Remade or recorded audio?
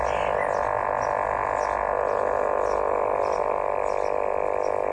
recorded